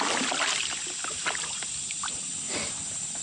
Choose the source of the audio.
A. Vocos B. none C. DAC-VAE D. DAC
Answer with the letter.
B